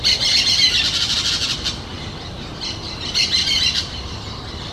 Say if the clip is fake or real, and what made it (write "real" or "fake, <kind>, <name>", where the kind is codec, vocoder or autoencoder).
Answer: real